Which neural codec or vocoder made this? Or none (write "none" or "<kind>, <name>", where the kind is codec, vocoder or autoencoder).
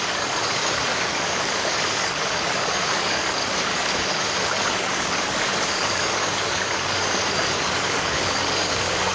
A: codec, DAC